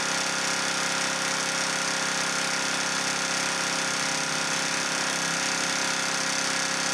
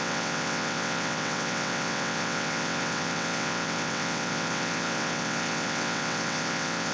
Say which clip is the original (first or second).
first